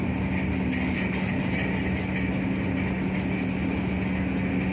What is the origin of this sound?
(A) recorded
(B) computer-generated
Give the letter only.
A